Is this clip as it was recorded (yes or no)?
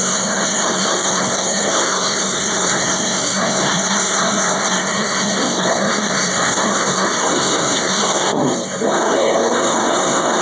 no